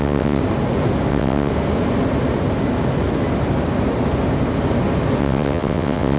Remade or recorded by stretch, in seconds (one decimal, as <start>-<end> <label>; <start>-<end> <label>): 0.0-0.4 remade; 0.4-1.1 recorded; 1.1-1.5 remade; 1.5-5.2 recorded; 5.2-6.2 remade